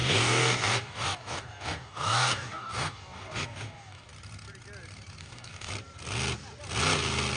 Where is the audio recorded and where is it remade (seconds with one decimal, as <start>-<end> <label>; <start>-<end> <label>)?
0.0-4.1 remade; 4.1-5.2 recorded; 5.2-5.7 remade; 5.7-7.4 recorded